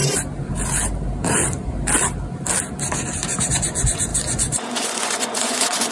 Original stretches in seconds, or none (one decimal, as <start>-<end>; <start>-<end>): 0.0-3.5